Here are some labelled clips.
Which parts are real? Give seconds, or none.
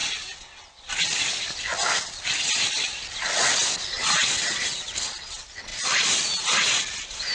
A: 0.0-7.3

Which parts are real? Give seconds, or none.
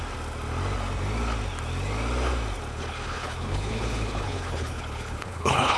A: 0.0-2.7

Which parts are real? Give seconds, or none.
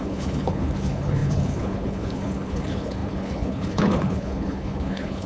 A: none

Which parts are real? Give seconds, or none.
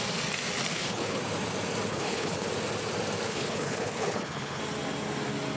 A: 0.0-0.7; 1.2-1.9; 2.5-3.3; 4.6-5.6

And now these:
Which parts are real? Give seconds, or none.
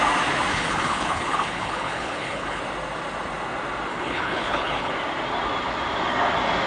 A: 0.0-0.5; 2.6-3.9; 4.9-6.7